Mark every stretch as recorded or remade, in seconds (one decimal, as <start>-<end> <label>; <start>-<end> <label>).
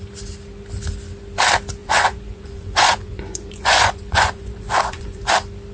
0.0-1.8 recorded; 1.8-5.2 remade; 5.2-5.7 recorded